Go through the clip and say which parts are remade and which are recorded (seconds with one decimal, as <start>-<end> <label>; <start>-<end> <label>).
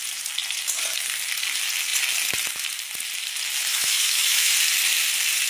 0.0-3.7 recorded; 3.7-4.5 remade; 4.5-5.5 recorded